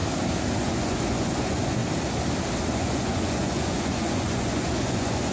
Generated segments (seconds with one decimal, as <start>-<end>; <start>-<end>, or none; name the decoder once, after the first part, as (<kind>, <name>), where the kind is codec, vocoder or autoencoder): 0.6-1.8 (vocoder, Vocos); 2.7-5.3